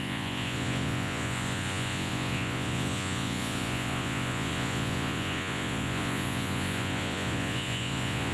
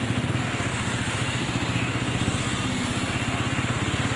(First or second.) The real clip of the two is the second